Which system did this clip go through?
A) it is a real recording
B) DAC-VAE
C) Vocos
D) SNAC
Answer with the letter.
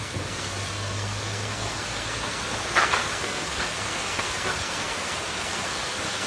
D